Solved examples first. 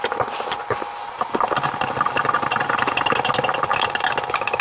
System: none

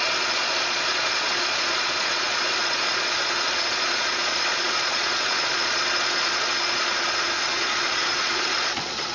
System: vocoder, Vocos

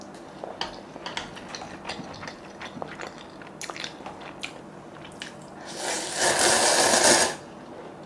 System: none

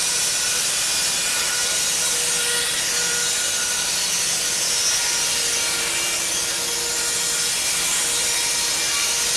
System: none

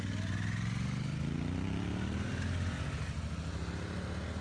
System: none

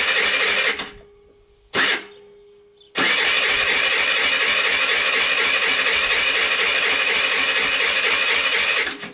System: none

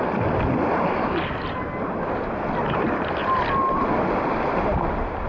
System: none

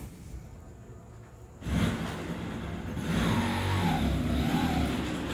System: none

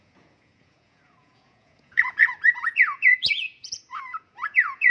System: vocoder, Vocos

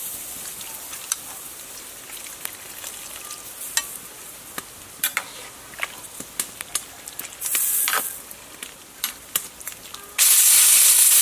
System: none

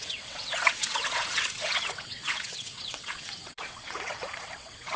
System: vocoder, WaveNeXt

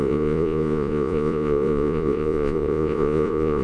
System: vocoder, Vocos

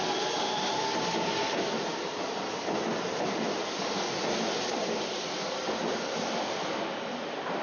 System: none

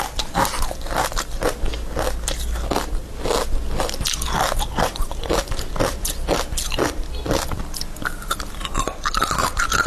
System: none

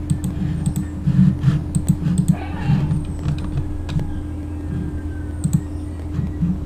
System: none